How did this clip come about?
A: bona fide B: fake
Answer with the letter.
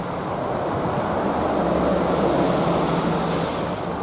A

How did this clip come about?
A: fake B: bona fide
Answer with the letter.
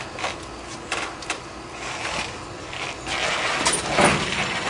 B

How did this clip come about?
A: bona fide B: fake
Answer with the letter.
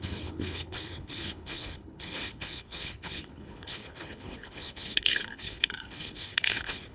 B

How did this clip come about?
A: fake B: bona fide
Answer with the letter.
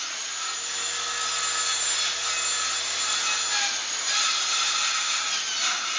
B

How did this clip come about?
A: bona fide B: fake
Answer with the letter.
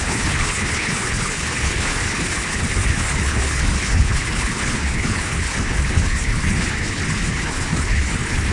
B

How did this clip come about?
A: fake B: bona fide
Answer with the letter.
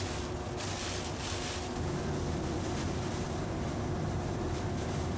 B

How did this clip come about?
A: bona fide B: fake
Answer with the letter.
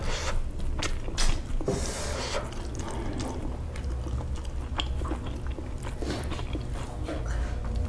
A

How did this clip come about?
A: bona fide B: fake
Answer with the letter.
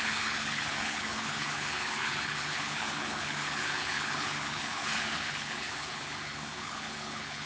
B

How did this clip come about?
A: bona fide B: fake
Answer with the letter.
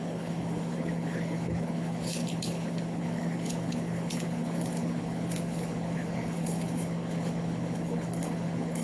B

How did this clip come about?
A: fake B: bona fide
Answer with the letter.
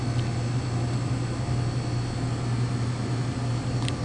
B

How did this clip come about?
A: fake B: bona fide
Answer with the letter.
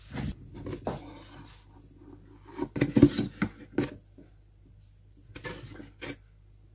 B